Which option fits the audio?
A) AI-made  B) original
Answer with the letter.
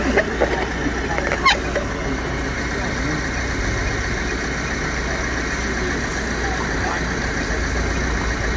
B